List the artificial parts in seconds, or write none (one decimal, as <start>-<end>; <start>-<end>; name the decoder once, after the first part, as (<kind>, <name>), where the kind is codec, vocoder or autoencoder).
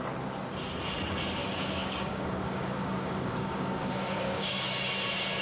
1.4-4.6 (codec, DAC)